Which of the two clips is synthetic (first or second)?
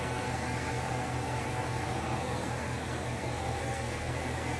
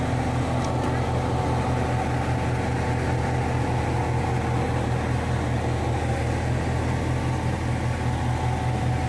first